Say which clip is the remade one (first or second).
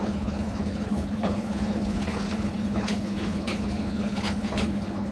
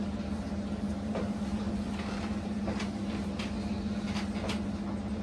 first